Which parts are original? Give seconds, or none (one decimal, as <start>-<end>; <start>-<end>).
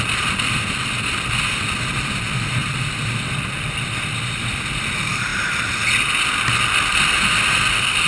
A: 0.0-8.1